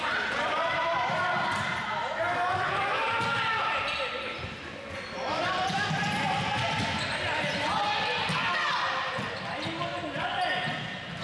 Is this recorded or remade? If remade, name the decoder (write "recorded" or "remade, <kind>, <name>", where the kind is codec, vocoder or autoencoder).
recorded